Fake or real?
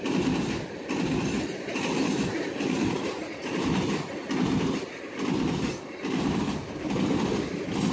real